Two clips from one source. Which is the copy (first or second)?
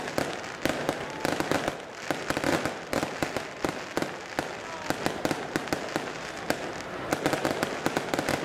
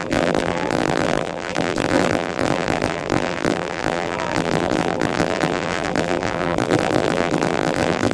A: second